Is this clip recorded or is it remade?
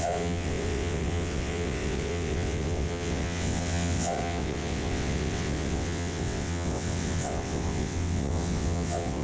remade